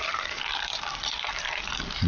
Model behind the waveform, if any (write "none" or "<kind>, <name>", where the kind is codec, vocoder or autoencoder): vocoder, BigVGAN v2